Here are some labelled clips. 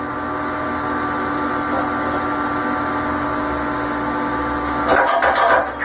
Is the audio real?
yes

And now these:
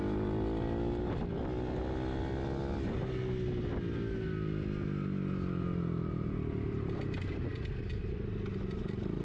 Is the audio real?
yes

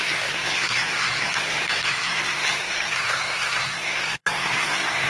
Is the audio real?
no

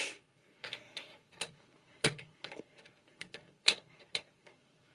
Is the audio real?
no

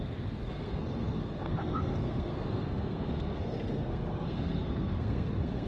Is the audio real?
no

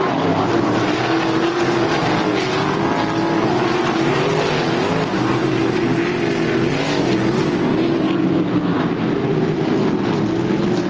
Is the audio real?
yes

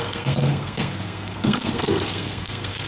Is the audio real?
no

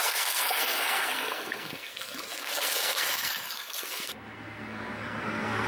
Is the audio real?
no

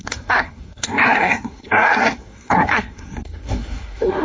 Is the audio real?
no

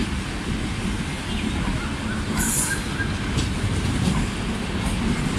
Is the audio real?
yes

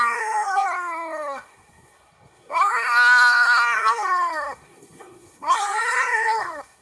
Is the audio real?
no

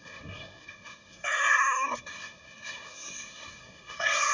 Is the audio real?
no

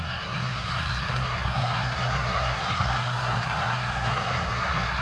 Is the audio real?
no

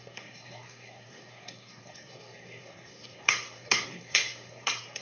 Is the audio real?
no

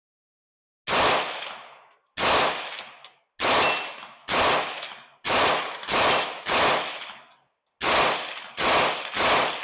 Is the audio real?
yes